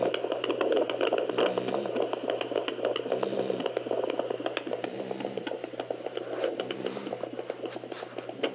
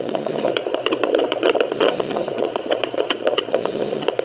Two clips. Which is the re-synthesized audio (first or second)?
second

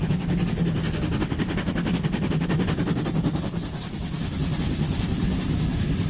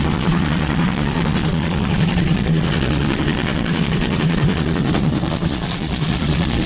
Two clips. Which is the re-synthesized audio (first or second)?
second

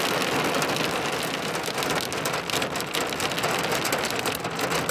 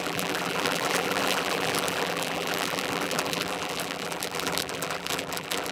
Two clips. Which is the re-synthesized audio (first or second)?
second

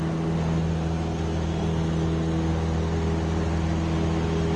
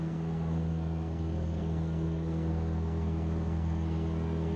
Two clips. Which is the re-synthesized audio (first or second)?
second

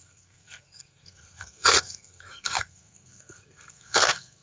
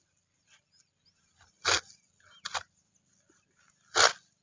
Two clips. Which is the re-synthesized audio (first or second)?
first